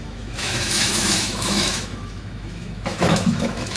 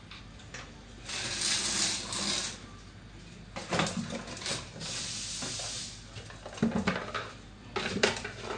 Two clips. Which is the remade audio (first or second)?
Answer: first